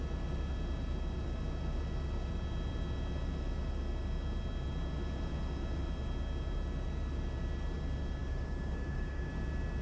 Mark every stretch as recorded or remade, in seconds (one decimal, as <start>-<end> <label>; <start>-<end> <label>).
0.0-8.2 recorded; 8.2-9.3 remade; 9.3-9.8 recorded